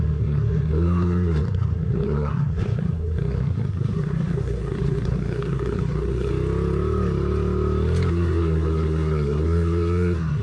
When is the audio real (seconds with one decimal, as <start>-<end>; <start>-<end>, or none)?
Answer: 6.3-8.1